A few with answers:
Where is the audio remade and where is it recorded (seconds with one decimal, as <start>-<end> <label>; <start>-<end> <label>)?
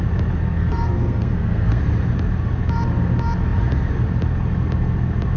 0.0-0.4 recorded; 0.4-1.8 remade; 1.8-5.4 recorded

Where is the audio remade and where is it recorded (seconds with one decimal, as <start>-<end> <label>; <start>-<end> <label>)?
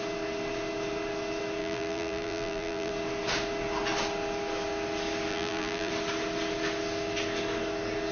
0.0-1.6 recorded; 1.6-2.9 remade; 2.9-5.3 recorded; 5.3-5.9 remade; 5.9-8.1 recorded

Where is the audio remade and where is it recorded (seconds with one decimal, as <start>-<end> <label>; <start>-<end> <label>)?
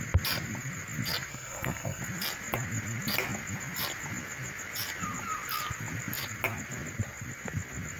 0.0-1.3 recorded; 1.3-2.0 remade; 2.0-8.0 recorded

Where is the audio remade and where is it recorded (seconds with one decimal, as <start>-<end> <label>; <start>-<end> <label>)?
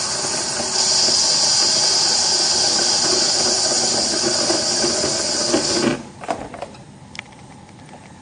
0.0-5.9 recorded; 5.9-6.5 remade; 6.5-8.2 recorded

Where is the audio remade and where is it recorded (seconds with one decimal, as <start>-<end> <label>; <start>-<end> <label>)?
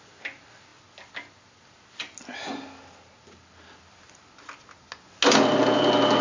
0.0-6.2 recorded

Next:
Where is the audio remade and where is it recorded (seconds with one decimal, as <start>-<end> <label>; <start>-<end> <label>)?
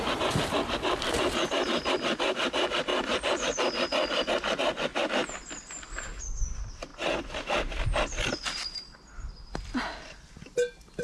0.0-11.0 recorded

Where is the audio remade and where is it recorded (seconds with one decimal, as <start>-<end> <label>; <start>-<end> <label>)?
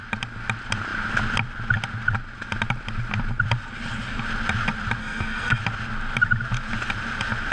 0.0-5.0 recorded; 5.0-5.6 remade; 5.6-7.5 recorded